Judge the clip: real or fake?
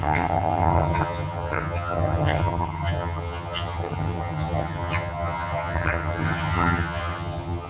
fake